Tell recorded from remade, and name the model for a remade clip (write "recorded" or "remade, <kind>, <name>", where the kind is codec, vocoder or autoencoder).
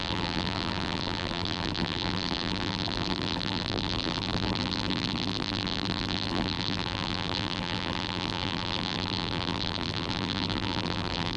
remade, vocoder, BigVGAN v2